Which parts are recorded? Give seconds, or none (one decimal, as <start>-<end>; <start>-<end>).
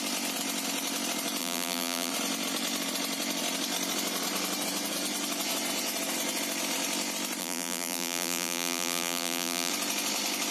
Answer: 0.0-1.4; 2.1-7.4; 9.7-10.5